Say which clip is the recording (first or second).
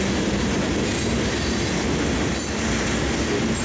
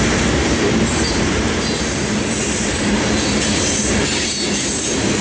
first